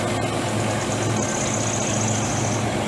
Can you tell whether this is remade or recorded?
recorded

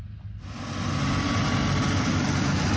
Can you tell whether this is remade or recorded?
recorded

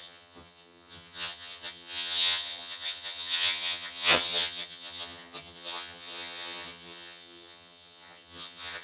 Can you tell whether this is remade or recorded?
remade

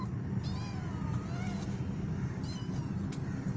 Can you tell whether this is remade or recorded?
recorded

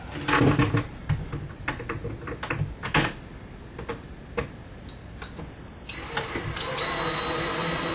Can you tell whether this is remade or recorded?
recorded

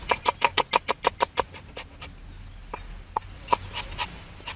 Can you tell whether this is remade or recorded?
recorded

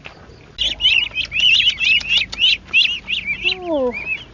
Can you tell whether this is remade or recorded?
recorded